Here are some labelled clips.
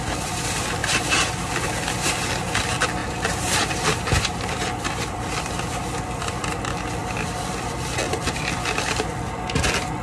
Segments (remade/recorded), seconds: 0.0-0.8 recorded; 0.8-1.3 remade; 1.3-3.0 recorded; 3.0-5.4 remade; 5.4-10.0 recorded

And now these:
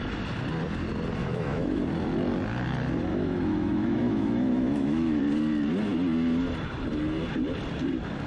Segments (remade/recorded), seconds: 0.0-1.2 recorded; 1.2-1.8 remade; 1.8-3.1 recorded; 3.1-5.2 remade; 5.2-8.3 recorded

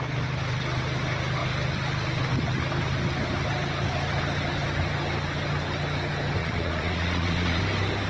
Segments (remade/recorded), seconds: 0.0-6.4 recorded; 6.4-7.6 remade; 7.6-8.1 recorded

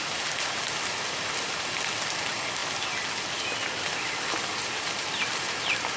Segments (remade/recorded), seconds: 0.0-6.0 recorded

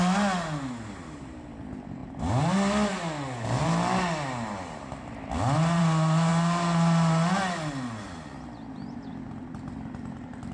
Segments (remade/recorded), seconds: 0.0-10.5 recorded